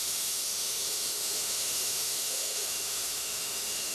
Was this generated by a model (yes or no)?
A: yes